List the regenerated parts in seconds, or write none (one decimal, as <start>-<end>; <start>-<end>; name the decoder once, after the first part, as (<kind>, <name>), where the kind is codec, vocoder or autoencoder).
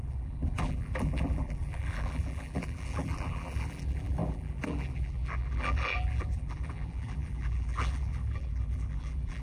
0.0-9.4 (vocoder, BigVGAN v2)